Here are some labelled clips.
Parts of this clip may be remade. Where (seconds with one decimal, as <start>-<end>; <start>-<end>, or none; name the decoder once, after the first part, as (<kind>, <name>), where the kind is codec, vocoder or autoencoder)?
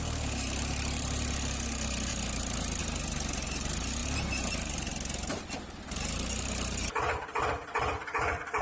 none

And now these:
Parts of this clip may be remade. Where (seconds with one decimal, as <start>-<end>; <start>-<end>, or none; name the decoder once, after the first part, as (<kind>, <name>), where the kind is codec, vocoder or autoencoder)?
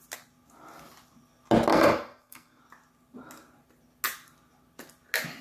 1.7-2.6 (codec, SNAC)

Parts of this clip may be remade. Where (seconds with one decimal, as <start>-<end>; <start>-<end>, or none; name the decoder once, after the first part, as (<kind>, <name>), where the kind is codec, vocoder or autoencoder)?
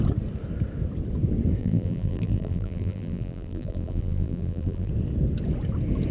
1.6-4.9 (vocoder, BigVGAN v2)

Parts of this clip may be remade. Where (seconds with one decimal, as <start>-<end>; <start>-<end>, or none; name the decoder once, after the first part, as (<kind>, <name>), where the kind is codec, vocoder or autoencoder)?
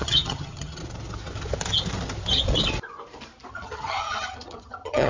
0.0-0.8 (vocoder, HiFi-GAN); 3.5-5.1